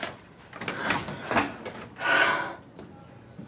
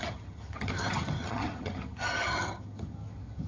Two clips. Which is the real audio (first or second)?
first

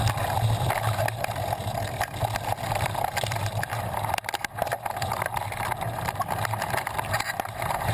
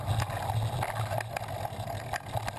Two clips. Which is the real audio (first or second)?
second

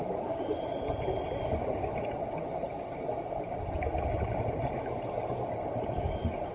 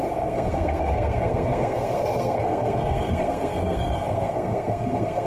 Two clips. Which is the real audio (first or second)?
first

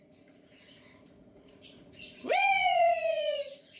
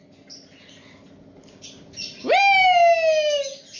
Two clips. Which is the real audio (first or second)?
second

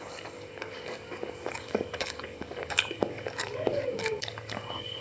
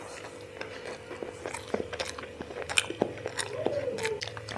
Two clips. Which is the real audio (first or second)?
second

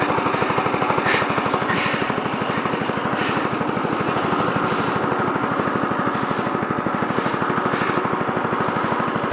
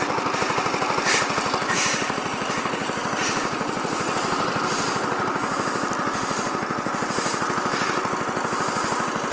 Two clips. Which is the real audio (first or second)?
first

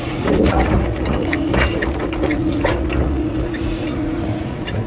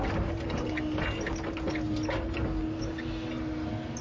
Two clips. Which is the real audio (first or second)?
second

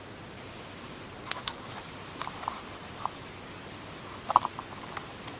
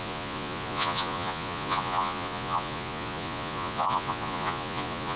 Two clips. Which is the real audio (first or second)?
first